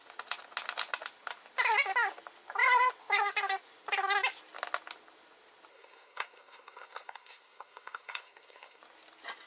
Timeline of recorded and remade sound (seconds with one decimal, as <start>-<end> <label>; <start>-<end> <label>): 0.0-5.7 recorded; 5.7-8.8 remade; 8.8-9.5 recorded